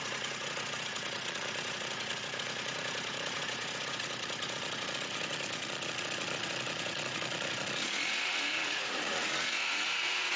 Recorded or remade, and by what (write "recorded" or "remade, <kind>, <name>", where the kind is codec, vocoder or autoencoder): remade, vocoder, Vocos